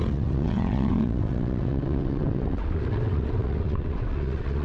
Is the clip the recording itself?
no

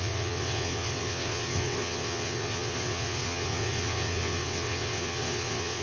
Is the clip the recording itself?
no